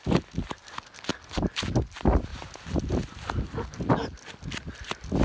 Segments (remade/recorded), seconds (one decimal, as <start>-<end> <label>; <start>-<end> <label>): 0.0-5.2 recorded